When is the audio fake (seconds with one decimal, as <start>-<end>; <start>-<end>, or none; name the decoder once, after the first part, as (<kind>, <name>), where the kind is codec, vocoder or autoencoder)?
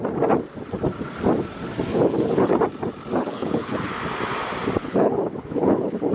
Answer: 1.9-2.5 (codec, HILCodec); 3.1-3.9; 4.8-6.1